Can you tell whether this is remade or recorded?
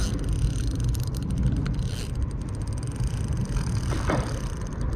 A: recorded